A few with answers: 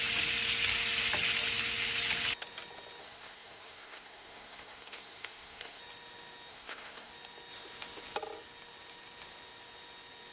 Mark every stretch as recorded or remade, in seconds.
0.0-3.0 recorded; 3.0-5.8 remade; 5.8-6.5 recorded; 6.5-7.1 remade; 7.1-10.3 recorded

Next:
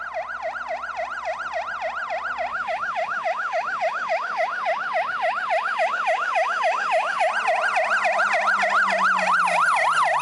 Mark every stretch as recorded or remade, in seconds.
0.0-2.5 recorded; 2.5-7.3 remade; 7.3-10.2 recorded

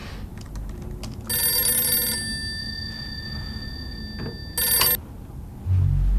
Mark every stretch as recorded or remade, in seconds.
0.0-2.6 recorded; 2.6-4.0 remade; 4.0-6.2 recorded

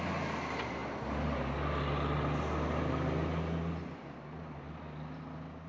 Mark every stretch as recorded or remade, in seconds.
0.0-5.7 recorded

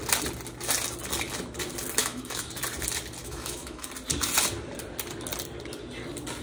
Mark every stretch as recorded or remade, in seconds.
0.0-2.0 recorded; 2.0-2.5 remade; 2.5-3.2 recorded; 3.2-3.9 remade; 3.9-6.4 recorded

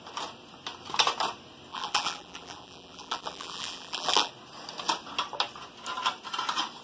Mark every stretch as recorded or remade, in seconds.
0.0-1.7 recorded; 1.7-4.3 remade; 4.3-6.8 recorded